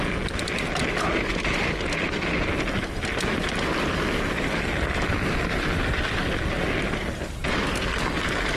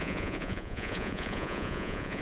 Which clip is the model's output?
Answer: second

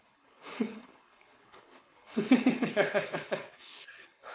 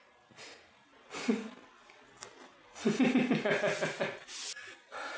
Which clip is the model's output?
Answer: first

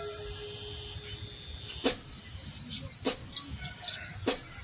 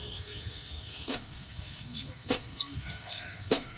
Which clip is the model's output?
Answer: second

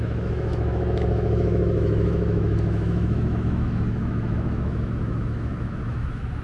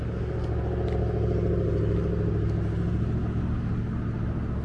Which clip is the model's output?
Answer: first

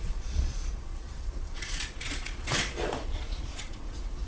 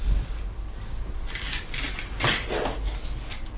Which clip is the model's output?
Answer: first